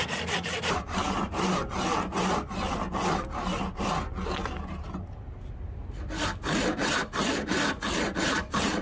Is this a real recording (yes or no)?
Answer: yes